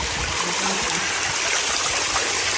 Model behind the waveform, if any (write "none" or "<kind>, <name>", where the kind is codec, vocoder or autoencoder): none